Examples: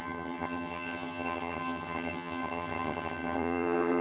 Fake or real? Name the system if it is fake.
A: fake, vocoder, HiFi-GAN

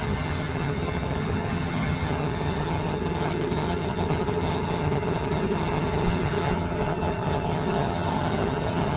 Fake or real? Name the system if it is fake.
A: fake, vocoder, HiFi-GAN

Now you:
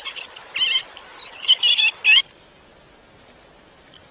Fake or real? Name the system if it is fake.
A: real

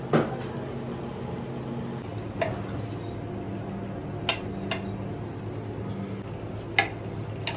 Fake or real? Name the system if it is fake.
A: real